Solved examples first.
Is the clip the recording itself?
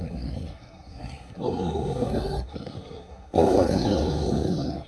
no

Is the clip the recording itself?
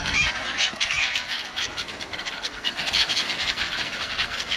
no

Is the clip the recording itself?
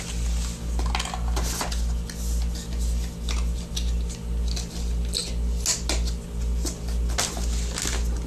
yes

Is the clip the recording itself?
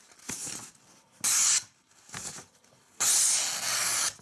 yes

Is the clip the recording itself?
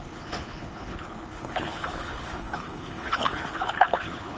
no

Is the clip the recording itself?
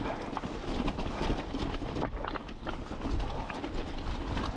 yes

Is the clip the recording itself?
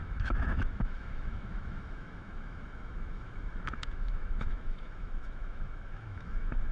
no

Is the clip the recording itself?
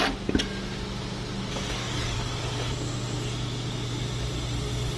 yes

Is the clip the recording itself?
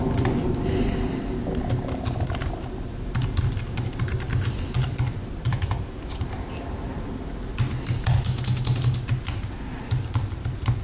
yes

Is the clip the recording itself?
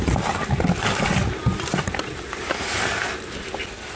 yes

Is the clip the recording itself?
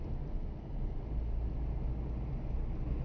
yes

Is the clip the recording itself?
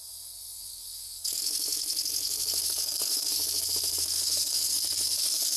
no